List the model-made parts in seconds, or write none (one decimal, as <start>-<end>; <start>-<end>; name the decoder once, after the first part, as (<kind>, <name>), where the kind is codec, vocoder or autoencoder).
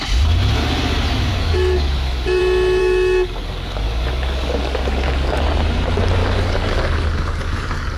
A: 1.3-2.4 (codec, DAC); 2.8-5.4; 6.2-8.0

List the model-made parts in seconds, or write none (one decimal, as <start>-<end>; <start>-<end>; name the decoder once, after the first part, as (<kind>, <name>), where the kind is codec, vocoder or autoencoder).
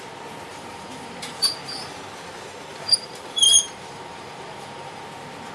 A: 0.5-2.0 (vocoder, BigVGAN v2); 2.7-5.0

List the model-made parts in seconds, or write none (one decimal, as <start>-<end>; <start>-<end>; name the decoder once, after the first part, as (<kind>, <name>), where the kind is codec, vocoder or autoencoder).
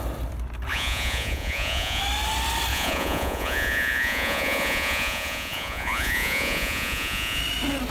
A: 0.7-2.0 (vocoder, Vocos); 2.7-7.4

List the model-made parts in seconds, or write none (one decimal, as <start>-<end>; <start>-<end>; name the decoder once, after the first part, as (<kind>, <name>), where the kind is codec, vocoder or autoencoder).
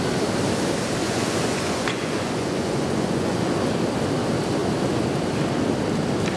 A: 1.0-3.5 (vocoder, Vocos)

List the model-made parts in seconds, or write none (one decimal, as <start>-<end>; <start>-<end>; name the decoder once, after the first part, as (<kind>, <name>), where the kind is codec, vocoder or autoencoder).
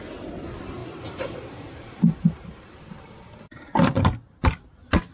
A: 0.8-3.9 (vocoder, BigVGAN v2)